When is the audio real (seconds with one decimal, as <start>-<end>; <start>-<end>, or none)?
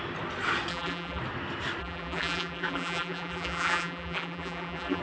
0.0-0.7; 1.2-1.8